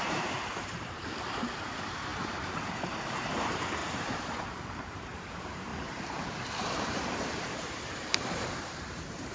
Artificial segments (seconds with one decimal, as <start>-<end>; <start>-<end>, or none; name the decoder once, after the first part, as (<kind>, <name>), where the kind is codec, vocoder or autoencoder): 0.0-9.3 (vocoder, BigVGAN v2)